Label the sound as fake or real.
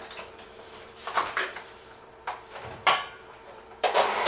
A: fake